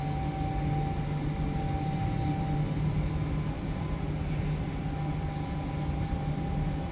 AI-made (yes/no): no